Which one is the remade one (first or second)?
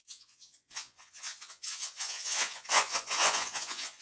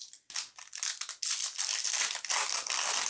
first